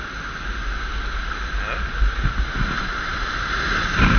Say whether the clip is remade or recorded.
recorded